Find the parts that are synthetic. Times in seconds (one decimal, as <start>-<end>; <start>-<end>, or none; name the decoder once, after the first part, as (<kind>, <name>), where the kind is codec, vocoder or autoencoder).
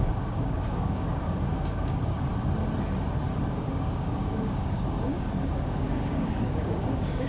0.0-2.3 (codec, DAC); 3.5-7.3